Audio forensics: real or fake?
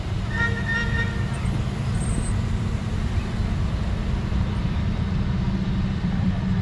fake